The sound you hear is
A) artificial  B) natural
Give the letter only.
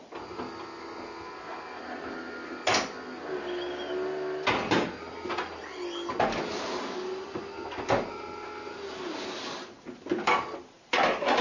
B